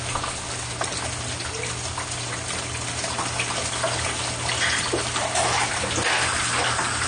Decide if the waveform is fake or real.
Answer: real